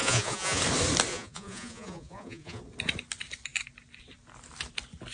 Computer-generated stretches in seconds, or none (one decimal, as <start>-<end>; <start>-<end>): 0.0-0.6; 1.1-2.6